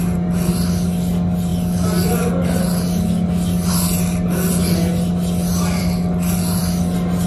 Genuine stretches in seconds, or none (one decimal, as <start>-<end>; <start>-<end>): 0.0-7.3